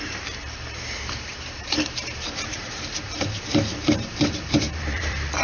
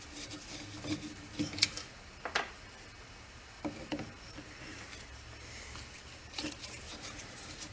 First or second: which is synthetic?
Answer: first